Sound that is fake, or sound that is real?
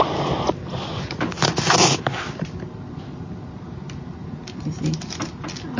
real